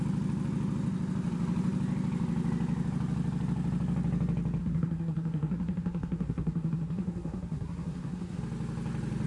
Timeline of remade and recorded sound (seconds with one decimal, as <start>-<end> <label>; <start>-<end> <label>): 0.0-4.6 recorded; 4.6-8.4 remade; 8.4-9.3 recorded